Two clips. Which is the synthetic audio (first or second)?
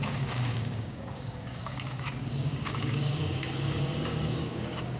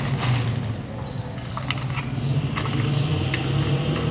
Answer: first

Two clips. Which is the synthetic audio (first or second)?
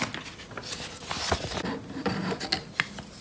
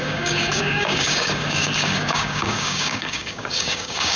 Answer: second